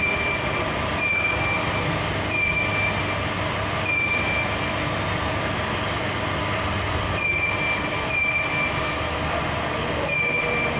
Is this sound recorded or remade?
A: recorded